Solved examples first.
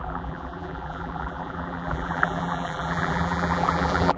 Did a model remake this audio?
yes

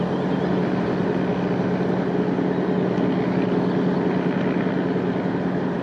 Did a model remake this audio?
no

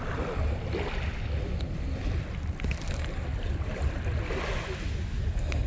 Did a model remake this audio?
no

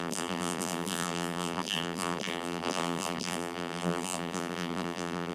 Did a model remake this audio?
yes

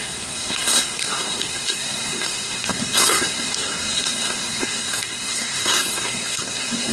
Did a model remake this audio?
yes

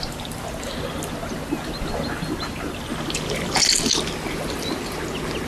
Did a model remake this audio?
no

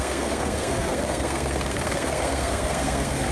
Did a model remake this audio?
yes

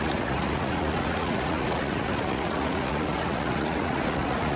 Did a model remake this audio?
yes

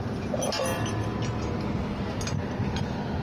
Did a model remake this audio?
no